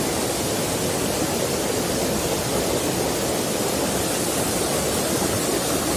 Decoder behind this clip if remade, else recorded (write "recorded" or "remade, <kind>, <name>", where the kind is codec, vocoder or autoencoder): recorded